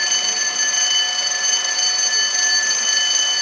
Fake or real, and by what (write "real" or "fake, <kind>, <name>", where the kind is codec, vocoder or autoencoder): real